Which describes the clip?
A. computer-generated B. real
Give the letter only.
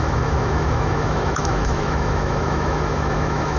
A